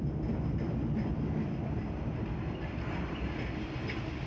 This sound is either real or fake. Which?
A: real